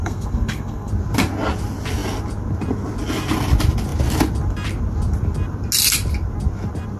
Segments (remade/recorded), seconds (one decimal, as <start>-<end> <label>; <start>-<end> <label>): 0.0-0.9 remade; 0.9-7.0 recorded